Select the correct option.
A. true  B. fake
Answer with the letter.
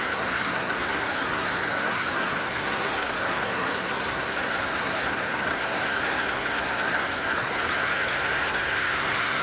B